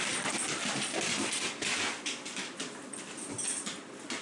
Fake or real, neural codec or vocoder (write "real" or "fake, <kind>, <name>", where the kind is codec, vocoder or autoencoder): real